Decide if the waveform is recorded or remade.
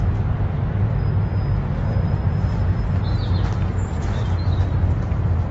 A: recorded